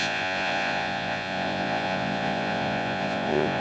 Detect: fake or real fake